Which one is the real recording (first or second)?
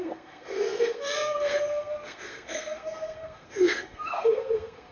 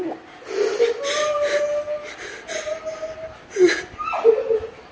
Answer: second